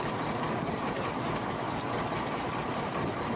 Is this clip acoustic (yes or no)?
no